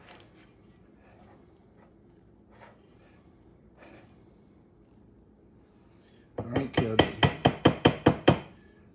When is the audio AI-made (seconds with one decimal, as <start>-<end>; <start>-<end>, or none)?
2.9-6.6; 7.4-8.4